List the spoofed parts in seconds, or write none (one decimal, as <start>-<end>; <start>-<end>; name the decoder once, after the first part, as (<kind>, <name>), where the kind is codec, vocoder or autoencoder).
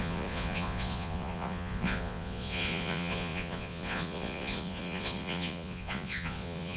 0.0-6.8 (vocoder, Vocos)